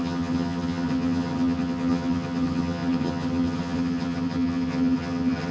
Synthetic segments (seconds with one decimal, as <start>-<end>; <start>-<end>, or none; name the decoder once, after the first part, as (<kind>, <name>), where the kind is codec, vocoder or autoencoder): 0.0-5.5 (vocoder, HiFi-GAN)